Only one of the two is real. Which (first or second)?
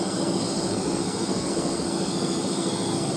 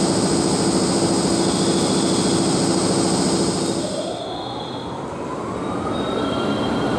second